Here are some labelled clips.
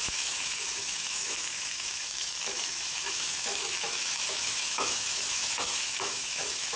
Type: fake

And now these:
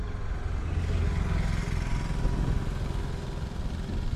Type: real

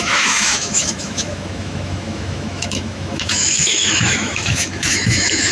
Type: fake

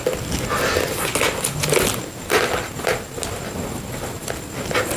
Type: real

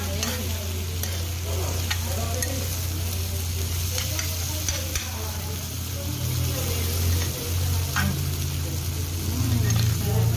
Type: real